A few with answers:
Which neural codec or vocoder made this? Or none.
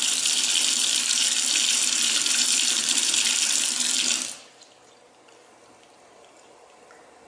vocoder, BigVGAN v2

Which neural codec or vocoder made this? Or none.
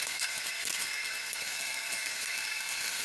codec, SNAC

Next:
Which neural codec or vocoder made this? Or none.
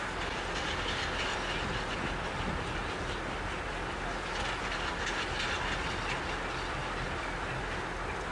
none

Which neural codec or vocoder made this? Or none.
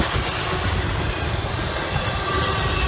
none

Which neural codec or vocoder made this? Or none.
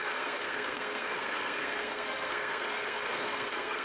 codec, SNAC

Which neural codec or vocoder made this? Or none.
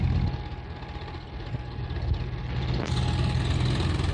none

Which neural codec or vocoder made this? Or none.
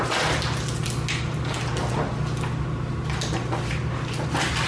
none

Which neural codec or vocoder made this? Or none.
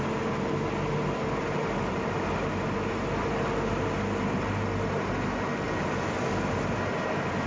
none